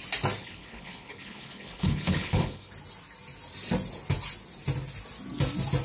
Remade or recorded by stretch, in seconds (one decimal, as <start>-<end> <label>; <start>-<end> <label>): 0.0-0.4 recorded; 0.4-2.7 remade; 2.7-5.8 recorded